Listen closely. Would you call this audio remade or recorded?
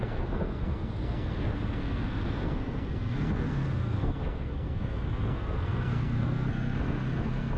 remade